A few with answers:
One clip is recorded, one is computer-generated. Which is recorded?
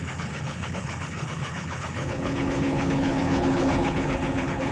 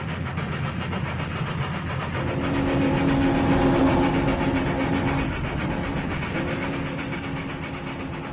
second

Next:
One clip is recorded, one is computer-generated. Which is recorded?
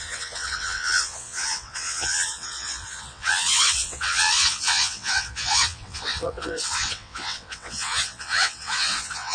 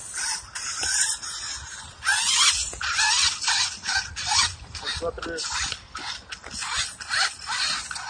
second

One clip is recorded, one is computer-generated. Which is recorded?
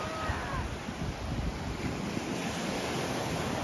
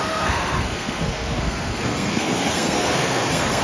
first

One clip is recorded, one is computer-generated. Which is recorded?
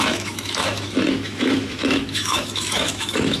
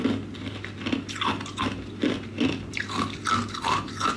second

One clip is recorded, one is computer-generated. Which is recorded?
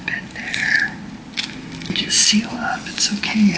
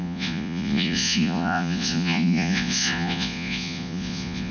first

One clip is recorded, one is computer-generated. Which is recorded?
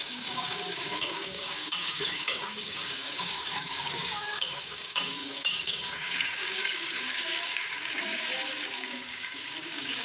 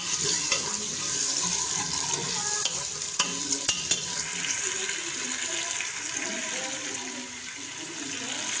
second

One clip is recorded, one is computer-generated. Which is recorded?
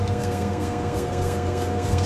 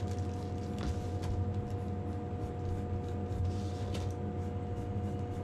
second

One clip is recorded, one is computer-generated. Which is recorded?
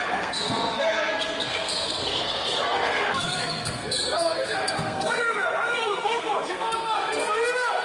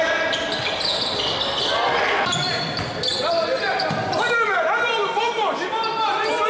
second